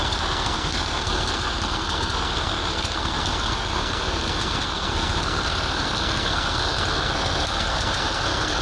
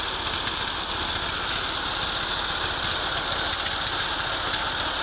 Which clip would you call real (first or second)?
second